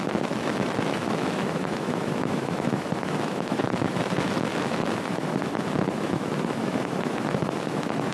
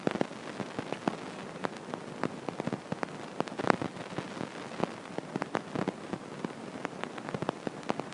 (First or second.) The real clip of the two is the second